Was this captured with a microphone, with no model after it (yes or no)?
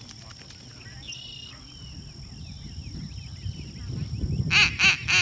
yes